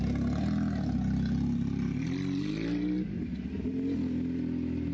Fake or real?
real